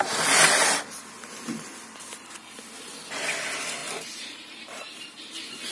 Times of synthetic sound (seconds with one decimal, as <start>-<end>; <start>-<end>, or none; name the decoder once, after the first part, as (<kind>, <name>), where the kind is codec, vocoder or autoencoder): 3.8-5.0 (vocoder, BigVGAN v2)

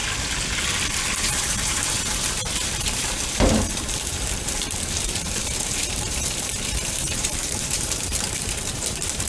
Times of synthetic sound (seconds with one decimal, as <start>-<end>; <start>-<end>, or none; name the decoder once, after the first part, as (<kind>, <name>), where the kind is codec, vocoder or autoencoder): 1.2-9.3 (vocoder, BigVGAN v2)

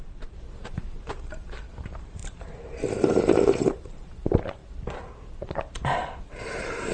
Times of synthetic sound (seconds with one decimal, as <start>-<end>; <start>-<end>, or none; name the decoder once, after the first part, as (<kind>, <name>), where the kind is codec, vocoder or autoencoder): 0.0-4.6 (vocoder, BigVGAN v2); 6.2-6.9

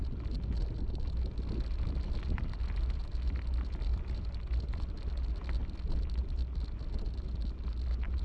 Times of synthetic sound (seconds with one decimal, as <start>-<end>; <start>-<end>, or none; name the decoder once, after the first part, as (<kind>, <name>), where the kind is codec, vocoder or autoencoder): 3.9-4.9 (vocoder, BigVGAN v2); 5.6-6.2